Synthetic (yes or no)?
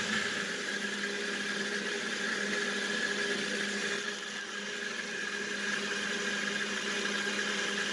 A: no